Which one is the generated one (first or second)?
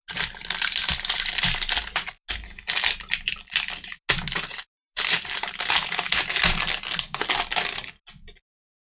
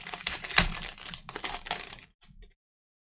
second